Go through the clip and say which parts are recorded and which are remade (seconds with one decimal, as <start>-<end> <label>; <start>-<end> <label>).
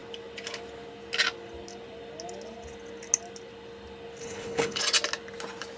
0.0-4.2 recorded; 4.2-4.8 remade; 4.8-5.8 recorded